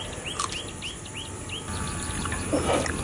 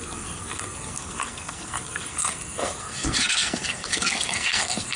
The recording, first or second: first